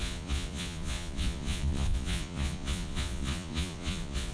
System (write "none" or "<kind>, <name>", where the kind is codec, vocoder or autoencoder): vocoder, Vocos